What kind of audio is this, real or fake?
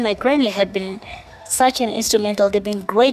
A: fake